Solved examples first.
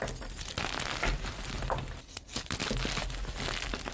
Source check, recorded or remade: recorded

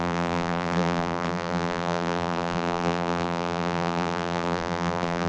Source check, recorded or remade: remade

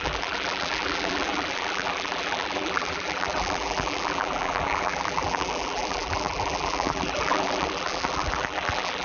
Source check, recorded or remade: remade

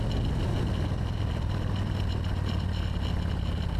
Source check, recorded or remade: recorded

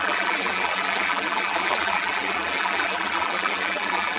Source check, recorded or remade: remade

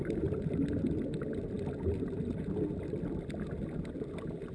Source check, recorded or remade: recorded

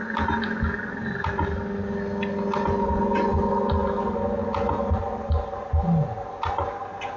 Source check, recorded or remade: recorded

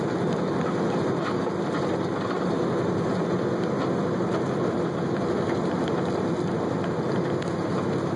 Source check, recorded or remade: recorded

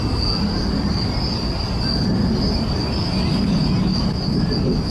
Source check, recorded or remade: recorded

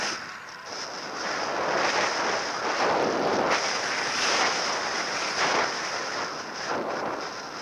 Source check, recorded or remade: recorded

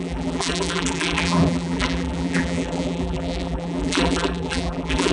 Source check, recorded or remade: remade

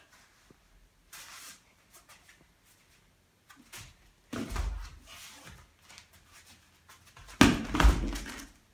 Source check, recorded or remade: recorded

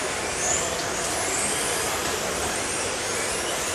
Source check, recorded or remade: recorded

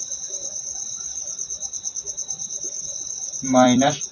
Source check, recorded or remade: remade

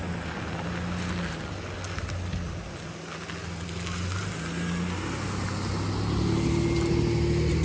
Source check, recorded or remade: recorded